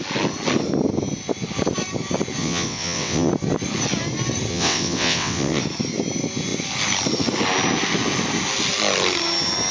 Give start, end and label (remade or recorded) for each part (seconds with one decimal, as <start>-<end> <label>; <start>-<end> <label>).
0.0-2.4 recorded; 2.4-3.3 remade; 3.3-4.5 recorded; 4.5-5.6 remade; 5.6-9.7 recorded